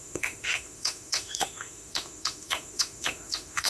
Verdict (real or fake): fake